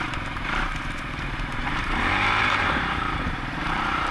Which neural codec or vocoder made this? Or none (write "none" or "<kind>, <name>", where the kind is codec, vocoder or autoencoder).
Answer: vocoder, BigVGAN v2